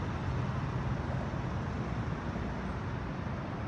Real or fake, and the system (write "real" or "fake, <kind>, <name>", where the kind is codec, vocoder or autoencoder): real